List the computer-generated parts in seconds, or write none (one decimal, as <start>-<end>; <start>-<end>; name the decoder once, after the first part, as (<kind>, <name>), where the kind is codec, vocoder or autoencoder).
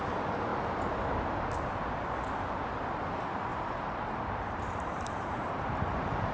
0.5-1.1 (vocoder, BigVGAN v2); 3.5-6.3